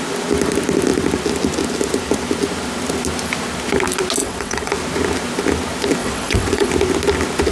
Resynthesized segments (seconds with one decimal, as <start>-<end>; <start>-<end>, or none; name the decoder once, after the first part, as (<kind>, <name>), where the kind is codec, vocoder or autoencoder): 4.2-4.7 (vocoder, WaveNeXt); 6.0-6.7